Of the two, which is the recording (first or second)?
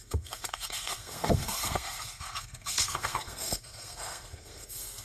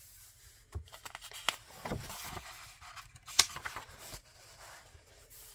second